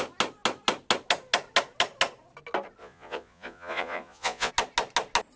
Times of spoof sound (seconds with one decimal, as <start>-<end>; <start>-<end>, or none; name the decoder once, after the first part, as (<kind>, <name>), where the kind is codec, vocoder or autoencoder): 2.8-4.5 (vocoder, Vocos)